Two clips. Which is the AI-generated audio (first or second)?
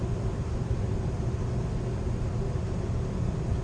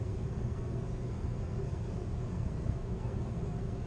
second